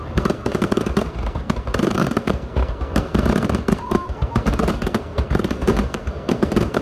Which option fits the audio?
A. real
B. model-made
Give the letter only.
B